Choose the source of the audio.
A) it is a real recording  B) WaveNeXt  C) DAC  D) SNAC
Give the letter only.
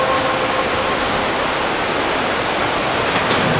A